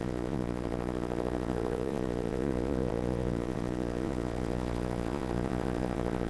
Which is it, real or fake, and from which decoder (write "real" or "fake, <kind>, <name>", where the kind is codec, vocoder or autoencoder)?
fake, vocoder, Vocos